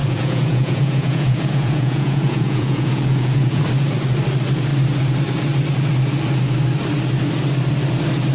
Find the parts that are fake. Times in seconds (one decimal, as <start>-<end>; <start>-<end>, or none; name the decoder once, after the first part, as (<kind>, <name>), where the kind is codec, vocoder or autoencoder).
0.0-3.6 (vocoder, Vocos)